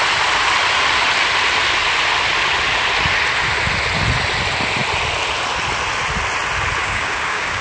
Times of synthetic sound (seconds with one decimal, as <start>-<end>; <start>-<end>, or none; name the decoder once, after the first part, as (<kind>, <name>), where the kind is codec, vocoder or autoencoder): 6.8-7.6 (codec, DAC)